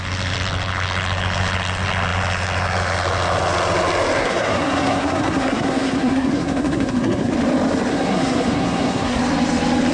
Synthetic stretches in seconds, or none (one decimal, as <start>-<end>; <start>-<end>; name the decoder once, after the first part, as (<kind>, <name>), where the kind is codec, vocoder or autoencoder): 4.2-7.3 (codec, SNAC); 7.9-9.2